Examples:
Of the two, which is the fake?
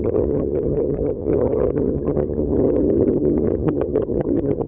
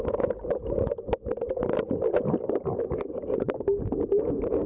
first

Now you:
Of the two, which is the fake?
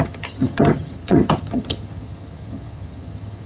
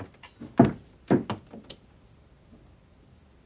first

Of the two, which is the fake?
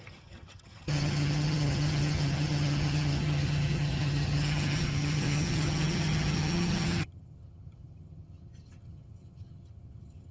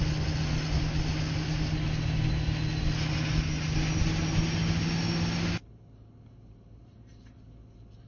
first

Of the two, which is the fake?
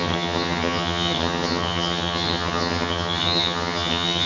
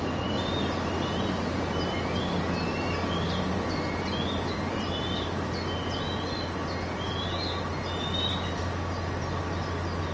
first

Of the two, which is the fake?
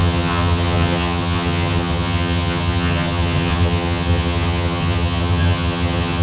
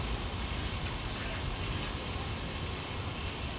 first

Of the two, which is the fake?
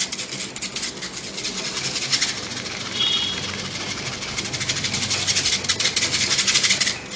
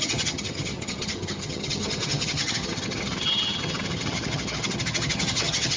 second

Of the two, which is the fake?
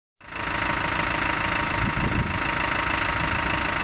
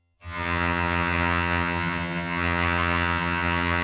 second